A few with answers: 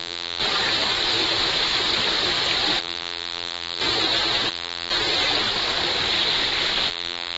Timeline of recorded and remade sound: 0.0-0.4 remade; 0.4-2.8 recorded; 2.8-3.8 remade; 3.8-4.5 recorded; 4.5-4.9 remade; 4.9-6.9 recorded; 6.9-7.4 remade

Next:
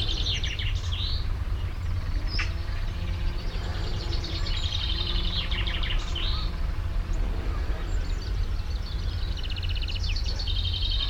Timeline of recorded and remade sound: 0.0-3.7 recorded; 3.7-7.2 remade; 7.2-11.1 recorded

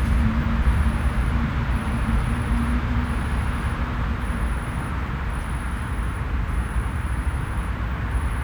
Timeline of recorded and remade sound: 0.0-3.3 remade; 3.3-6.0 recorded; 6.0-8.4 remade

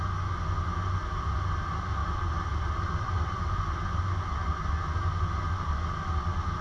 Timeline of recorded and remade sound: 0.0-2.0 recorded; 2.0-3.6 remade; 3.6-6.6 recorded